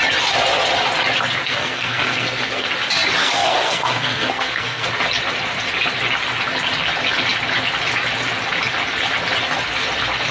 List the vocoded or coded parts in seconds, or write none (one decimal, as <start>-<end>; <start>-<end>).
1.4-2.7; 3.2-4.9